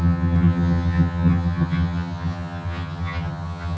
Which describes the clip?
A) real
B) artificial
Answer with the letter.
B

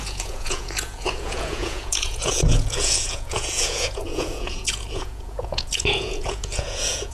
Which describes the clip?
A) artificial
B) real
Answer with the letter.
A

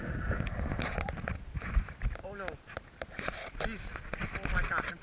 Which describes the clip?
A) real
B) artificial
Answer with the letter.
A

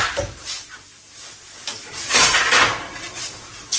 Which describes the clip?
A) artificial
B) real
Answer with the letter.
A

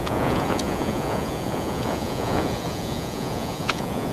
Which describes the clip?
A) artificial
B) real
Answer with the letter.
A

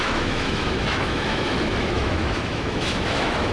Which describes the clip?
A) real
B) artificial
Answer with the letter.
B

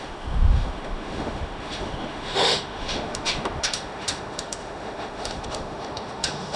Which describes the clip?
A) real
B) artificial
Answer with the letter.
B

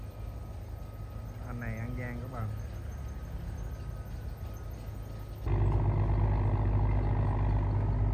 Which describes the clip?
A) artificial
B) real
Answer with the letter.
B